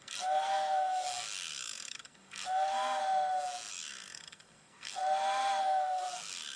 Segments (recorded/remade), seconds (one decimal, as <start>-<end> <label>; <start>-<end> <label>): 0.0-3.0 remade; 3.0-3.7 recorded; 3.7-5.0 remade; 5.0-5.6 recorded; 5.6-6.6 remade